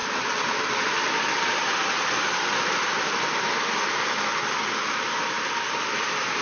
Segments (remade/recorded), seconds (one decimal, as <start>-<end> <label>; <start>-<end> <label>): 0.0-6.4 recorded